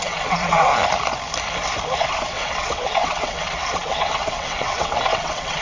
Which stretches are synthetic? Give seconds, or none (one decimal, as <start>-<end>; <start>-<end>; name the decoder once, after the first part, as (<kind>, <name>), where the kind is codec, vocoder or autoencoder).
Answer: 0.0-0.7 (vocoder, WaveNeXt); 2.0-5.6